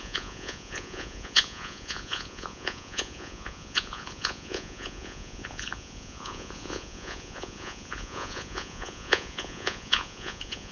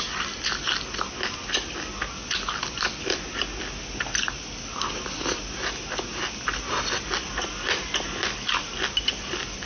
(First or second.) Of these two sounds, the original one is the second